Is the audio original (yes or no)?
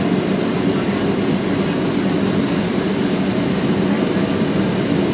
yes